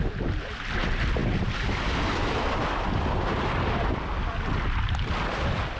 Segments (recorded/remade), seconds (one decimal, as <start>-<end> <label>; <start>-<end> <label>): 0.0-5.8 remade

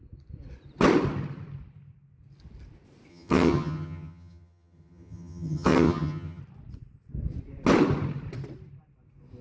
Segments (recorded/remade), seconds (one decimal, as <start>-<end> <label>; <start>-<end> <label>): 0.0-3.1 recorded; 3.1-6.4 remade; 6.4-9.4 recorded

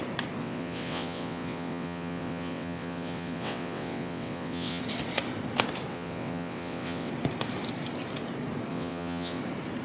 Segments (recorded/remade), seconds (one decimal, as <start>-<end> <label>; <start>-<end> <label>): 0.0-0.4 recorded; 0.4-4.8 remade; 4.8-5.9 recorded; 5.9-7.1 remade; 7.1-8.7 recorded; 8.7-9.4 remade; 9.4-9.8 recorded

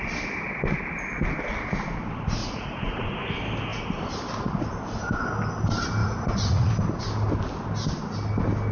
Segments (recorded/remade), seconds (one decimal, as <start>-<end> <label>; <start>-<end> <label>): 0.0-2.4 recorded; 2.4-3.3 remade; 3.3-6.0 recorded; 6.0-6.7 remade; 6.7-8.7 recorded

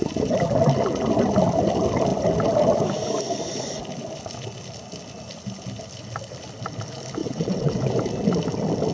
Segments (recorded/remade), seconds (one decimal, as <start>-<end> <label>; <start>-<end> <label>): 0.0-7.2 recorded; 7.2-7.7 remade; 7.7-8.9 recorded

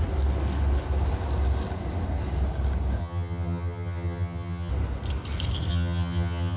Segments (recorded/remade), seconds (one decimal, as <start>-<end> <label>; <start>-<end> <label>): 0.0-3.0 recorded; 3.0-4.7 remade; 4.7-5.7 recorded; 5.7-6.6 remade

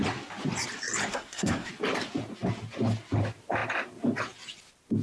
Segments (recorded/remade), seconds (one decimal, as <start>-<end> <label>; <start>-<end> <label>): 0.0-1.1 recorded; 1.1-1.7 remade; 1.7-5.0 recorded

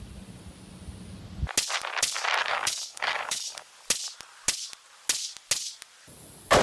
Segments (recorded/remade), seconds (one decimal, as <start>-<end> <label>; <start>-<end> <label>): 0.0-2.4 recorded; 2.4-3.7 remade; 3.7-6.6 recorded